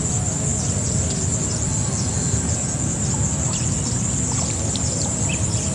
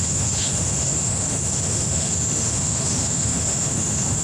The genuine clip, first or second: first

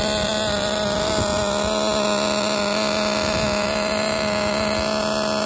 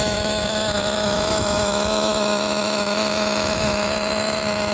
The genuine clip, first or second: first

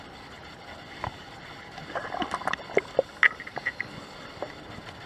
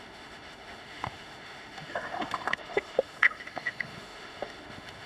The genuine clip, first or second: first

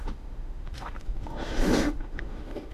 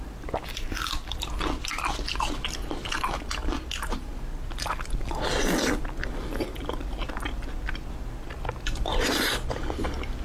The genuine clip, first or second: second